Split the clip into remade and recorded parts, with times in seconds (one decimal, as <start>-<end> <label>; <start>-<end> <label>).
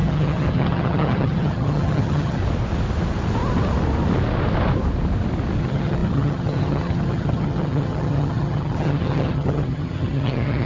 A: 0.0-2.4 remade; 2.4-5.6 recorded; 5.6-10.7 remade